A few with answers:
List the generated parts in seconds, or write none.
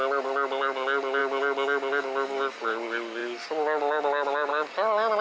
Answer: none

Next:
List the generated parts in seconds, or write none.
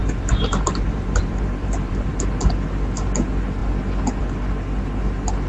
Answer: 0.0-2.1 (vocoder, BigVGAN v2)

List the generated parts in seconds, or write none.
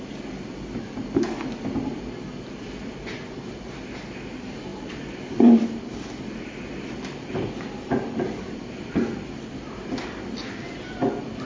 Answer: 4.7-9.5 (vocoder, BigVGAN v2)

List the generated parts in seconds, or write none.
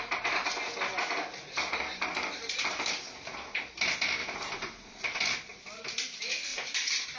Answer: 4.2-5.2 (vocoder, BigVGAN v2); 6.5-7.2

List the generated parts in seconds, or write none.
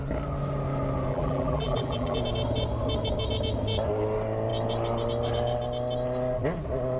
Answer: 1.1-2.2 (vocoder, BigVGAN v2)